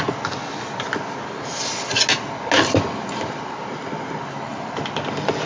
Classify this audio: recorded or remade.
recorded